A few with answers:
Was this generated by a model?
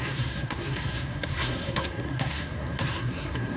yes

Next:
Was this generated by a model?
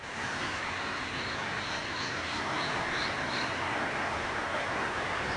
yes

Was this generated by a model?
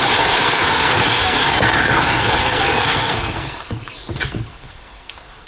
yes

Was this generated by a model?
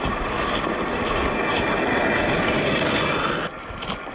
no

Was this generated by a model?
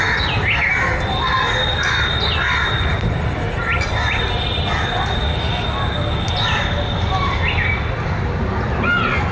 no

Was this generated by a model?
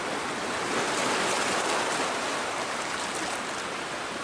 no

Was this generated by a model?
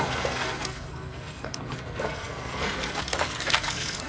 yes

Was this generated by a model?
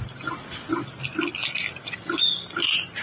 no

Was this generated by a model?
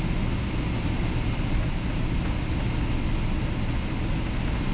no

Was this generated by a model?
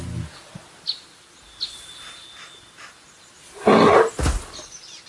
no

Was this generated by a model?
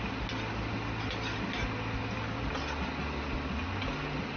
no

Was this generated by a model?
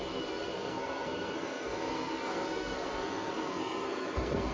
yes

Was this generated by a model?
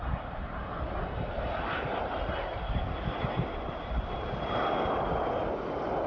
no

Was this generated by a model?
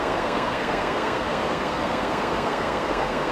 yes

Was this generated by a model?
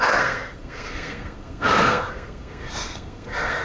yes